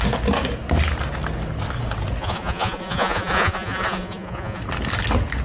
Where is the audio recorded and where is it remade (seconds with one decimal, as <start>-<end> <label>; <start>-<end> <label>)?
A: 0.0-2.2 recorded; 2.2-4.6 remade; 4.6-5.4 recorded